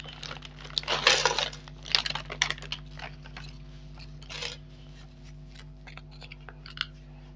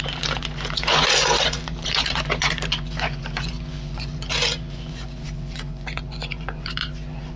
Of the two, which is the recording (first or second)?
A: first